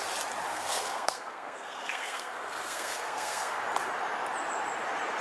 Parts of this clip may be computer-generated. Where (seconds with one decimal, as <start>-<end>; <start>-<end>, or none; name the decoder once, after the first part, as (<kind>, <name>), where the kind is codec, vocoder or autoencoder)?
0.5-3.6 (codec, SNAC)